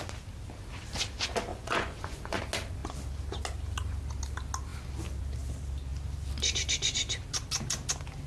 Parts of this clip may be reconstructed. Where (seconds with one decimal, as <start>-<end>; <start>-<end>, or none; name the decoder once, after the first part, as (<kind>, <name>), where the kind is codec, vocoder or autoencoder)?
1.5-2.4 (vocoder, Vocos)